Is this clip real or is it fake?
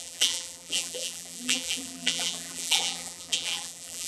fake